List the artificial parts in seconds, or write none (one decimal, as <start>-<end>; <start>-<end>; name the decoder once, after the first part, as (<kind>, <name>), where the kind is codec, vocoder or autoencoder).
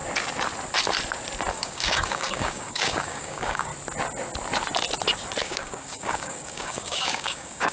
1.5-3.7 (codec, DAC); 5.4-7.7